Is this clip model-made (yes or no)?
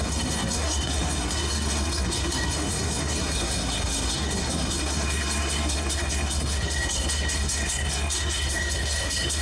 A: yes